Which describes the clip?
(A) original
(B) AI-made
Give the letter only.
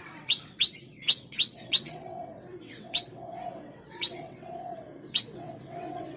B